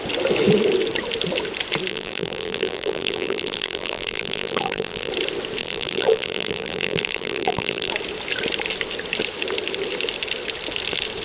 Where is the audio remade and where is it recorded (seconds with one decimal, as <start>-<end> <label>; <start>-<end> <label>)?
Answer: 0.0-1.9 recorded; 1.9-5.1 remade; 5.1-5.6 recorded; 5.6-7.9 remade; 7.9-11.2 recorded

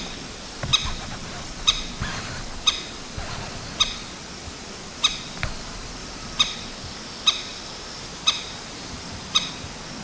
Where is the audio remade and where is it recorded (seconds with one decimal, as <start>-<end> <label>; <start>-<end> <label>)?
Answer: 0.0-0.7 recorded; 0.7-1.9 remade; 1.9-6.0 recorded; 6.0-6.8 remade; 6.8-7.5 recorded; 7.5-9.5 remade; 9.5-10.0 recorded

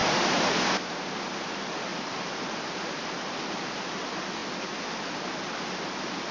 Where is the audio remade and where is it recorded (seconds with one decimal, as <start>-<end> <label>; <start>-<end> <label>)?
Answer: 0.0-0.6 remade; 0.6-6.3 recorded